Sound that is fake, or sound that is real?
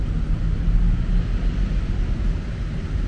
real